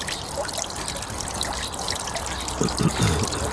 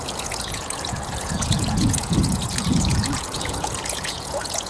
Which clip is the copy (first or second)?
second